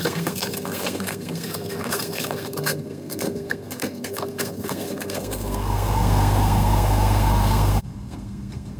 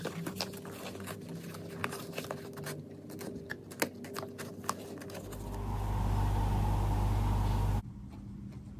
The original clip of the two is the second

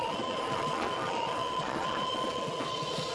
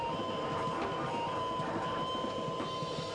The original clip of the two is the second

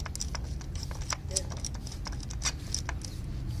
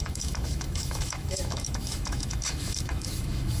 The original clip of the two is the first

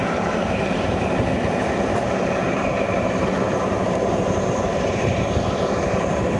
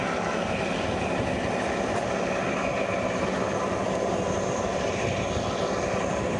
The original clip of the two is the second